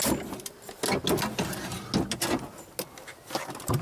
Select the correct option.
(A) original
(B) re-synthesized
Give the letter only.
A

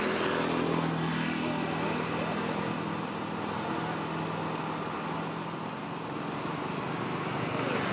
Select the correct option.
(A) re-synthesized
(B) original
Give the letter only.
B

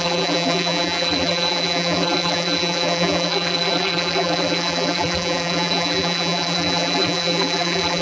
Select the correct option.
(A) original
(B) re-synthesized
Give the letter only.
B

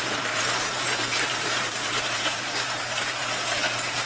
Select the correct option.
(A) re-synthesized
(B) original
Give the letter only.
A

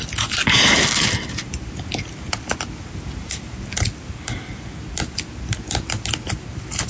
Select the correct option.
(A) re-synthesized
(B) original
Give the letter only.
B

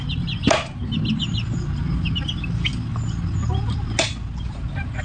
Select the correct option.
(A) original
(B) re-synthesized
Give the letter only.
A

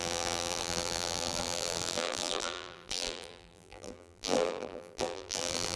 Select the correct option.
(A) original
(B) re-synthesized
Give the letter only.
B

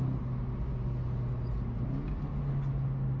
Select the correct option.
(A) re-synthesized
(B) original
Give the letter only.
B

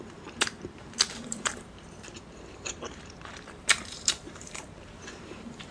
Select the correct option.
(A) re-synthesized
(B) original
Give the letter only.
A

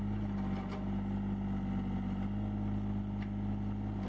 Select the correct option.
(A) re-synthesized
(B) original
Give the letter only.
B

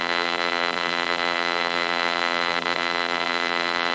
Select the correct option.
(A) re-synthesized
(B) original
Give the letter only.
A